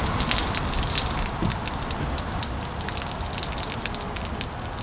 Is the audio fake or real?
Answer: real